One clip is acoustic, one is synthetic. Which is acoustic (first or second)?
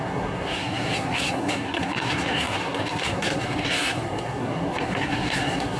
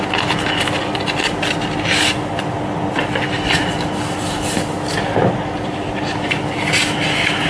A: second